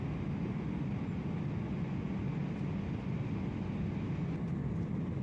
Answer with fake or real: real